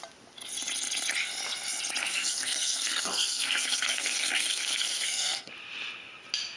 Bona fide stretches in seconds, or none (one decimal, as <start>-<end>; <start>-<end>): 0.0-2.0; 5.5-6.6